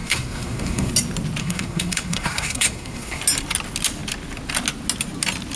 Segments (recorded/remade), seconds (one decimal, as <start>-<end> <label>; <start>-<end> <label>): 0.0-0.9 remade; 0.9-1.4 recorded; 1.4-3.2 remade; 3.2-5.6 recorded

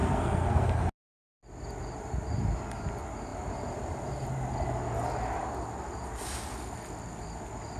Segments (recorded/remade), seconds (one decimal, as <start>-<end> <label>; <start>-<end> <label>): 0.0-0.8 remade; 0.8-7.8 recorded

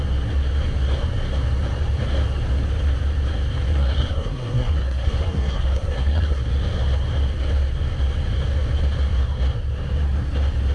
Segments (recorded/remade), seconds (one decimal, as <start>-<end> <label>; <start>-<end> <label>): 0.0-3.7 recorded; 3.7-6.4 remade; 6.4-10.7 recorded

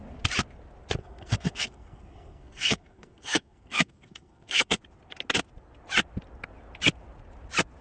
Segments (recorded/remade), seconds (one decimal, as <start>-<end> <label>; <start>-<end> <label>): 0.0-1.0 recorded; 1.0-4.8 remade; 4.8-7.8 recorded